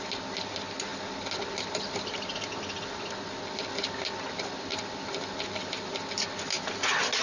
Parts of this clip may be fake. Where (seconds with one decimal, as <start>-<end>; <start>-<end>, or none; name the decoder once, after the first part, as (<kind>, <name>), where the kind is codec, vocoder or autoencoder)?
none

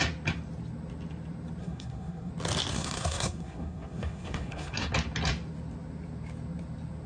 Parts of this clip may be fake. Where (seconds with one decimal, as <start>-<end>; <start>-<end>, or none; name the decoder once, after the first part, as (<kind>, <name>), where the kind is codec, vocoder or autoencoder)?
1.6-2.3 (codec, SNAC); 2.7-4.9